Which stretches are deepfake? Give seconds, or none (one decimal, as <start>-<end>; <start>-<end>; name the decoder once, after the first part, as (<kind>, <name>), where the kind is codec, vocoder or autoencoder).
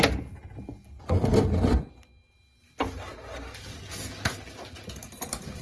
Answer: none